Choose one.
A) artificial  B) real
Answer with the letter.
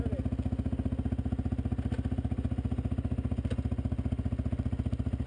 B